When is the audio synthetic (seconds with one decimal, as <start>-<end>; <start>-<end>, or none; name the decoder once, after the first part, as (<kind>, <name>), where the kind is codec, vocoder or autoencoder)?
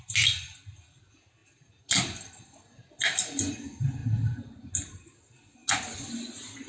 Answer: none